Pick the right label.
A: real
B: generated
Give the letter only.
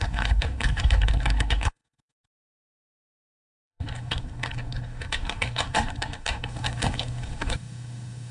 B